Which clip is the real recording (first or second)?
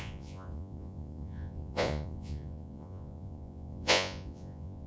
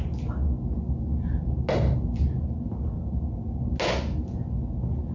second